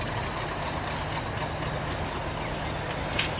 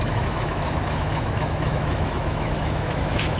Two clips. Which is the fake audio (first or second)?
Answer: second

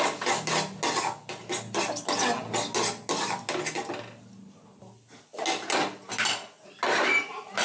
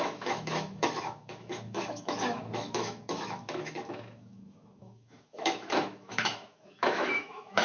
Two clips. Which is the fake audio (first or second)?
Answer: second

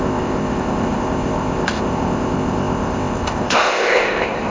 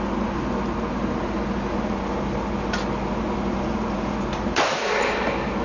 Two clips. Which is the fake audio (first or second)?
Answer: first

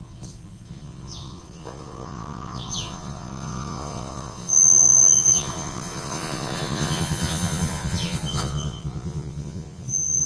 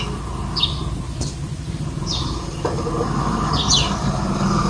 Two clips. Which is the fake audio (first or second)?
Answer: first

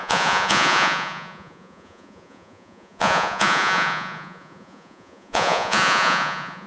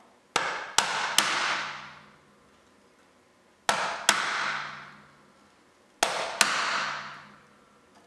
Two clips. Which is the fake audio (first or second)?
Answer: first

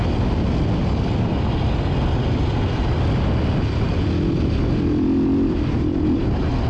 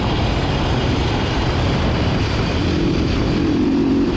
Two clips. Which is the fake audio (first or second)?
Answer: second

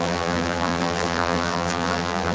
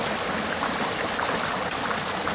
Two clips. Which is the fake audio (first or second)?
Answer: first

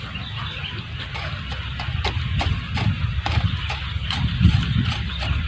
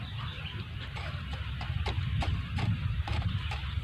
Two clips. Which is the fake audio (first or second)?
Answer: second